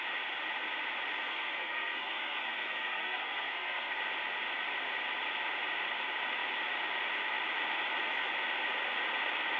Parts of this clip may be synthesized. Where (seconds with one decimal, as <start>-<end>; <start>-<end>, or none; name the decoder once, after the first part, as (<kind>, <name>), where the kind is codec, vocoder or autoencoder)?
1.3-4.0 (codec, SNAC)